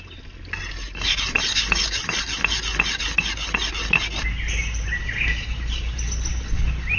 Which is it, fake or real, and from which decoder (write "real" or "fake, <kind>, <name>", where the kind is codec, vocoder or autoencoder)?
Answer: real